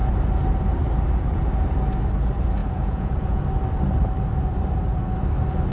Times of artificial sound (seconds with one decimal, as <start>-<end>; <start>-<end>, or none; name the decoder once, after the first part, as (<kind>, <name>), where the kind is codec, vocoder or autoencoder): 2.6-3.4 (vocoder, Vocos)